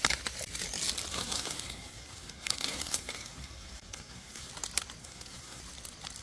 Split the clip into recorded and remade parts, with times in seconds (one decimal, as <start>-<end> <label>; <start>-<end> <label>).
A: 0.0-1.1 recorded; 1.1-4.5 remade; 4.5-5.0 recorded; 5.0-5.6 remade; 5.6-6.2 recorded